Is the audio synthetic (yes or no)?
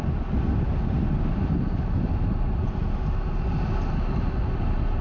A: no